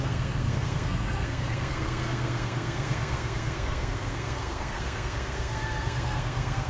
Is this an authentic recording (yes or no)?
no